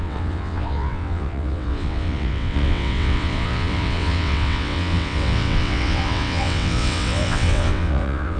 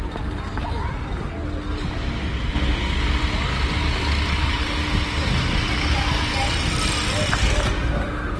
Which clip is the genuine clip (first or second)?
second